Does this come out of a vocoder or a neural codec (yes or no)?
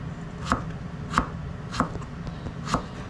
no